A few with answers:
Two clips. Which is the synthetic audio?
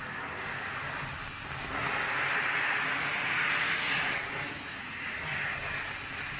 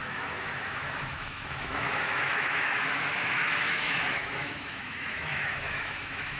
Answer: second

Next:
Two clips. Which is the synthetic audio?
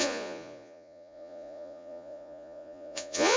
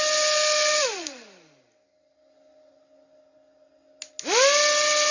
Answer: first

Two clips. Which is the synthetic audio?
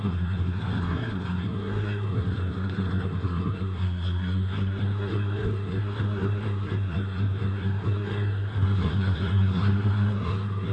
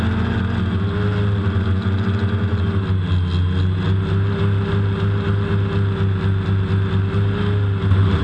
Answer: first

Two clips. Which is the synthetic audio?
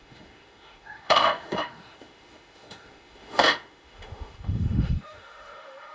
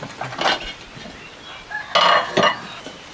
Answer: first